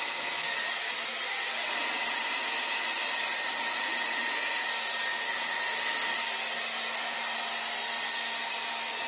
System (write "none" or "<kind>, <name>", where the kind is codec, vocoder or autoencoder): none